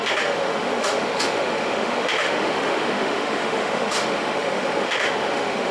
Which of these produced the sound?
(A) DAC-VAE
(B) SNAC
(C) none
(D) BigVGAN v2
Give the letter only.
A